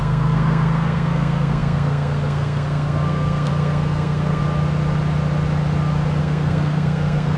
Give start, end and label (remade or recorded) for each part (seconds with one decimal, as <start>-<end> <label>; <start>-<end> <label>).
0.0-4.4 remade; 4.4-6.2 recorded; 6.2-7.4 remade